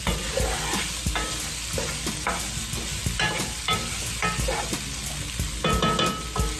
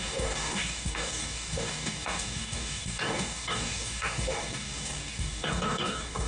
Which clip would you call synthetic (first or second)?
second